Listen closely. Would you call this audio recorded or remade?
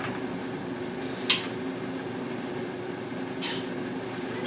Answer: recorded